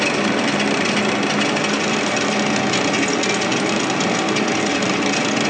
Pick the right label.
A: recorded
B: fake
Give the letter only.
A